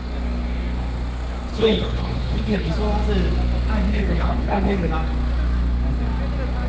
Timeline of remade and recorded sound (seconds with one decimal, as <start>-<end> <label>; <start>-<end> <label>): 0.0-1.5 recorded; 1.5-2.7 remade; 2.7-3.9 recorded; 3.9-4.9 remade; 4.9-6.7 recorded